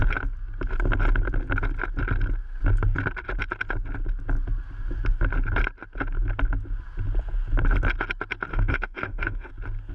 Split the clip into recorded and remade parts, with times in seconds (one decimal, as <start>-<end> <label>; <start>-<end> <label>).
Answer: 0.0-8.5 recorded; 8.5-9.5 remade; 9.5-9.9 recorded